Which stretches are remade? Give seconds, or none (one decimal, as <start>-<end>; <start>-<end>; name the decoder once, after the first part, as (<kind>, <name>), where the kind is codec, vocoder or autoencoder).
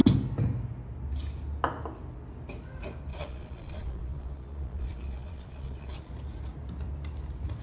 3.1-6.1 (vocoder, Vocos)